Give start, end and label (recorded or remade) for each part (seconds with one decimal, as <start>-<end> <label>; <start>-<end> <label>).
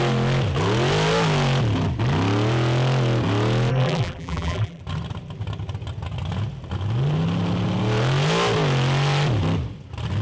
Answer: 0.0-3.7 recorded; 3.7-4.8 remade; 4.8-10.2 recorded